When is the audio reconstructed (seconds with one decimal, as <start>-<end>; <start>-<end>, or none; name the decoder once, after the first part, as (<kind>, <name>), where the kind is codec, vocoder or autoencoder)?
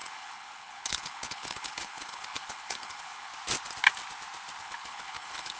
0.0-3.3 (codec, HILCodec); 4.6-5.6